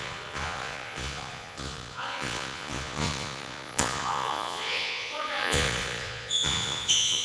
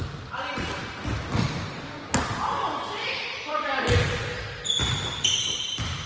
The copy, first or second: first